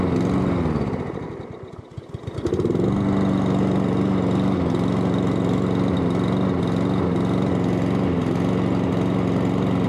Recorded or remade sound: recorded